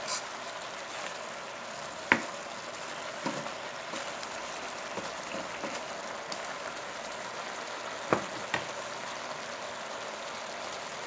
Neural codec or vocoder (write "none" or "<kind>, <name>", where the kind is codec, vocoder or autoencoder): none